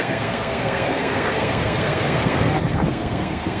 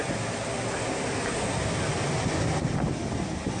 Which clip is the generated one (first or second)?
first